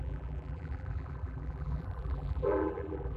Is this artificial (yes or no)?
yes